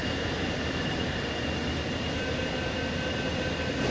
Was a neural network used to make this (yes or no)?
no